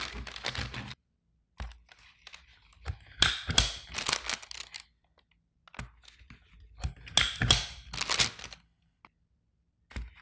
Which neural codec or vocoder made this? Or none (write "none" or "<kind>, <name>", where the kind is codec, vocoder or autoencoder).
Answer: none